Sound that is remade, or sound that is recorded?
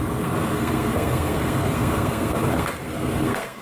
remade